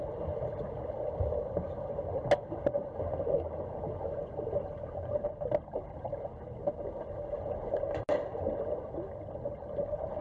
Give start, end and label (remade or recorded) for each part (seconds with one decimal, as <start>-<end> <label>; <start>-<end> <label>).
0.0-10.2 recorded